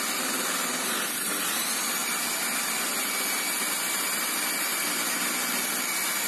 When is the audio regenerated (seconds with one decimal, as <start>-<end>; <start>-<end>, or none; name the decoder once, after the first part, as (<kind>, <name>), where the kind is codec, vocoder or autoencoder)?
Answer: none